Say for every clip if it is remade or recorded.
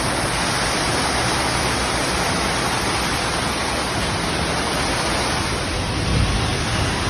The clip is recorded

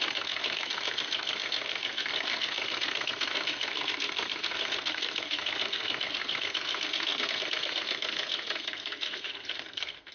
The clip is remade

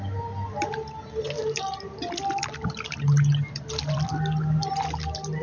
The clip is recorded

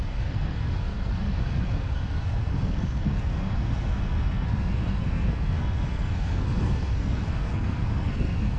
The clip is remade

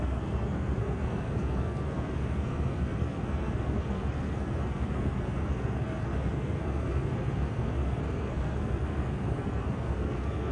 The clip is remade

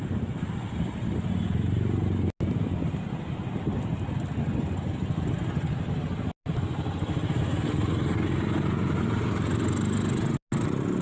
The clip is recorded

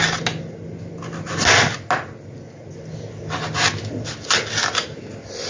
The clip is recorded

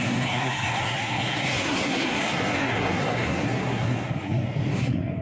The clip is remade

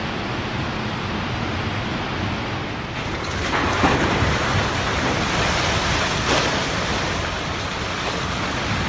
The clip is recorded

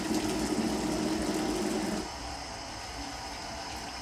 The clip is recorded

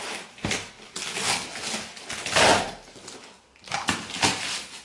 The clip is recorded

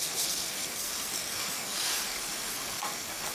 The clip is remade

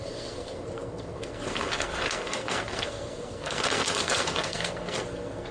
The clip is remade